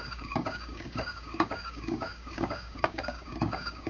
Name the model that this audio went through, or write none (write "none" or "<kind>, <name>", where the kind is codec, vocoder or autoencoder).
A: codec, DAC